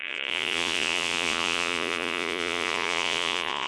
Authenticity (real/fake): fake